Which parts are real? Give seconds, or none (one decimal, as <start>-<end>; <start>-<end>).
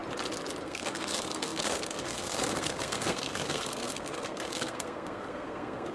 0.0-0.6